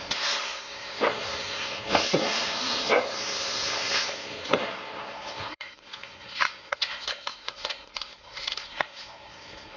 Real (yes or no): no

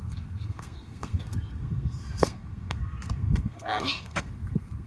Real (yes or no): no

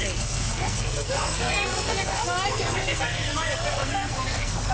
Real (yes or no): no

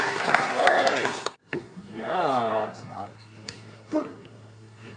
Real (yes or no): no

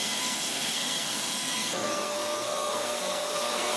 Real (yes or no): no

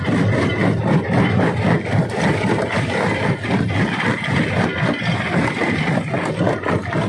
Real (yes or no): yes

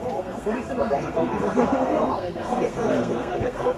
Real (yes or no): no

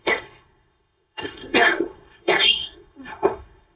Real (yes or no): no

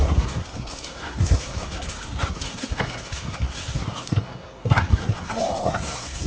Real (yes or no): no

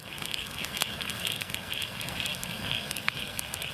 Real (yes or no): no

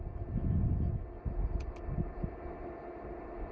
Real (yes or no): yes